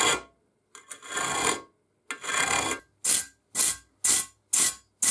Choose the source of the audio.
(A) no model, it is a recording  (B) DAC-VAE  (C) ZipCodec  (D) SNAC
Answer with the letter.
A